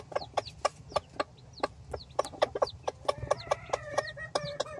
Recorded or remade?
recorded